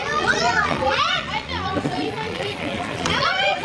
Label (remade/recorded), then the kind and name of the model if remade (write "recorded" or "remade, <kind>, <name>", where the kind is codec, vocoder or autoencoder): remade, vocoder, Vocos